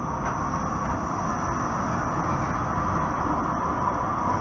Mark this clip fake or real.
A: real